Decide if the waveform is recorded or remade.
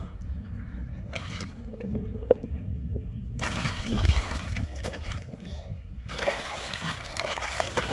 remade